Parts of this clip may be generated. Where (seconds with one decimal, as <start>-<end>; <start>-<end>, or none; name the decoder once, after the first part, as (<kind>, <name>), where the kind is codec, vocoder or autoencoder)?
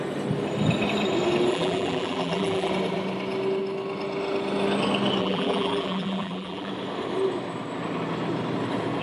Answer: 1.5-2.7 (vocoder, BigVGAN v2); 5.2-6.7